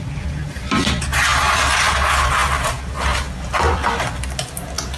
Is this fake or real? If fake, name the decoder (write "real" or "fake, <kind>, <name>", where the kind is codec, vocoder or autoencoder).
real